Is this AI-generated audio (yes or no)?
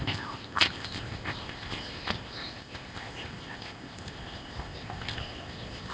yes